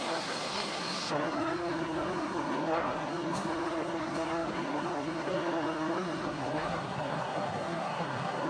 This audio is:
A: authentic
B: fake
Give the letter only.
B